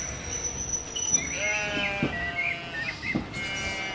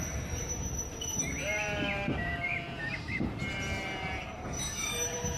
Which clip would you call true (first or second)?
first